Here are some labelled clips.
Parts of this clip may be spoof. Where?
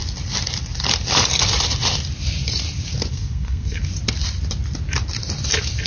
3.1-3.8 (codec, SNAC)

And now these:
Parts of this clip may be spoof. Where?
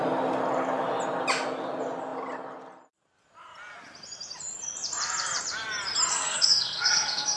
6.1-7.4 (codec, SNAC)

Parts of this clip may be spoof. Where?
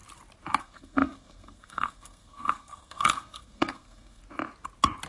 0.6-4.2 (codec, SNAC)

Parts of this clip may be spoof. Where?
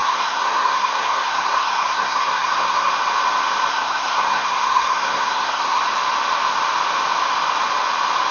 0.0-2.9 (codec, SNAC); 3.7-5.8